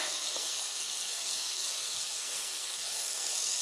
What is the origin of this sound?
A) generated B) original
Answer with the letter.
A